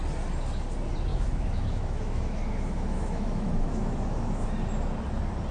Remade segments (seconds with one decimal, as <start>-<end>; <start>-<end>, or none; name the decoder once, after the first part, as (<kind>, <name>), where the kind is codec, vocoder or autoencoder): 1.1-4.4 (autoencoder, DAC-VAE)